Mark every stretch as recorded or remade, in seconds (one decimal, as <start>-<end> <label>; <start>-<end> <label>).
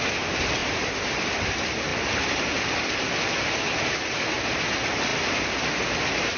0.0-0.6 recorded; 0.6-1.5 remade; 1.5-1.9 recorded; 1.9-4.1 remade; 4.1-6.4 recorded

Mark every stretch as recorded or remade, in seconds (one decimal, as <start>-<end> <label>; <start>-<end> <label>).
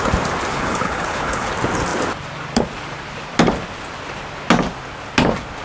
0.0-0.5 recorded; 0.5-1.5 remade; 1.5-5.6 recorded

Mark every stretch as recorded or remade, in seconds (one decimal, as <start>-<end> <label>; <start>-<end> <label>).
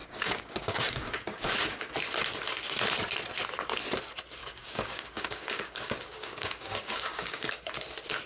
0.0-1.9 remade; 1.9-4.4 recorded; 4.4-7.7 remade; 7.7-8.3 recorded